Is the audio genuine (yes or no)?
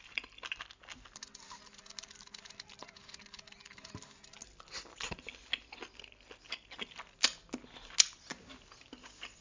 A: yes